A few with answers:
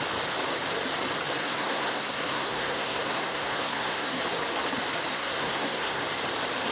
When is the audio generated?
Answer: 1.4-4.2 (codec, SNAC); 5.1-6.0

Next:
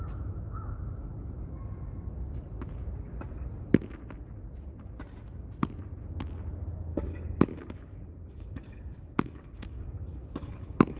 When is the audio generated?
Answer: 6.9-11.0 (codec, DAC)

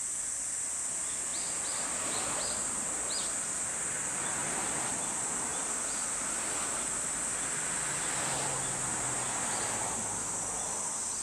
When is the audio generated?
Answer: none

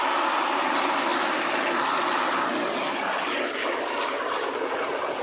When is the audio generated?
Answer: none